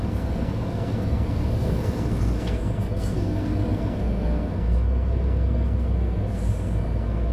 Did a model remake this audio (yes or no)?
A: yes